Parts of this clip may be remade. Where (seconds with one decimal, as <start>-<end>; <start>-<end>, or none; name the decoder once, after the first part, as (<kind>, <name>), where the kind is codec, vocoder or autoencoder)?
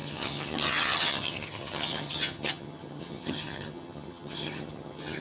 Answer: 0.0-5.2 (vocoder, HiFi-GAN)